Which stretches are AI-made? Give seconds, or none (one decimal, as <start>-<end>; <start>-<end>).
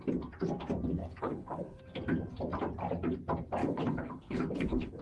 1.0-1.8; 3.6-5.0